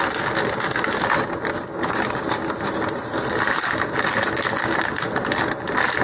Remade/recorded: recorded